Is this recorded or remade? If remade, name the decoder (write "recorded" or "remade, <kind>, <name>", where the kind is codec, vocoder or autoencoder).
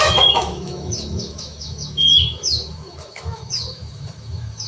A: remade, autoencoder, DAC-VAE